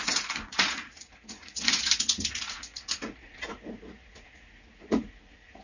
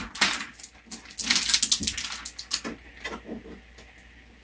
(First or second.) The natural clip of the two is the second